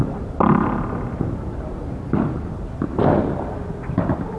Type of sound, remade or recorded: recorded